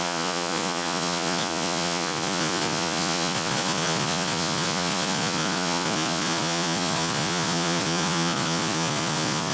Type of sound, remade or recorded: remade